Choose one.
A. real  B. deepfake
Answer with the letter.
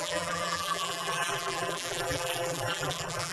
B